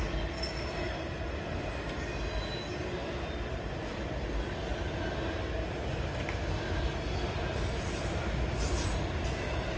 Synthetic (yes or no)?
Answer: no